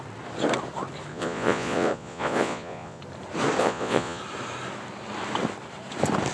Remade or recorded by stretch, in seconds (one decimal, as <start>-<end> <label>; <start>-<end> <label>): 0.0-1.1 recorded; 1.1-3.0 remade; 3.0-3.6 recorded; 3.6-4.2 remade; 4.2-6.3 recorded

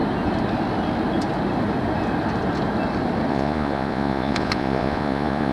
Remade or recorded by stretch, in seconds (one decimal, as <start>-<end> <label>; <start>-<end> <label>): 0.0-3.3 recorded; 3.3-5.5 remade

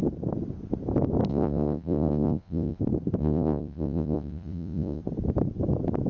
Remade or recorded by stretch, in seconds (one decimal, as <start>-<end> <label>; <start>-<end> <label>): 0.0-1.3 recorded; 1.3-2.8 remade; 2.8-3.2 recorded; 3.2-5.0 remade; 5.0-6.1 recorded